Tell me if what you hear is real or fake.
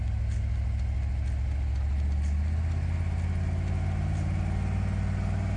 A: real